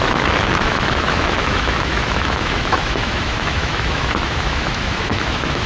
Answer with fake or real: fake